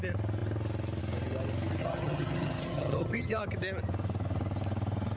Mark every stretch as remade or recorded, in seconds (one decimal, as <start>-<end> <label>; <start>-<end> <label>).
0.0-1.8 recorded; 1.8-3.4 remade; 3.4-5.2 recorded